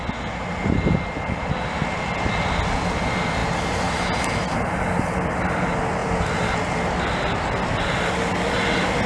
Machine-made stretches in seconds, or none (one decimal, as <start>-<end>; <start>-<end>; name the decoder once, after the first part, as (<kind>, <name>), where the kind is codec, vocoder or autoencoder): none